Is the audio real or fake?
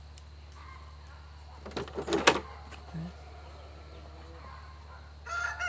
real